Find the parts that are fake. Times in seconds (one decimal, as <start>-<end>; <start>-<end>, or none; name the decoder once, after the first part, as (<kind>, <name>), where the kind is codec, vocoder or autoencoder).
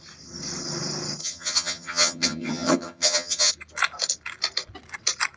1.2-3.5 (vocoder, HiFi-GAN)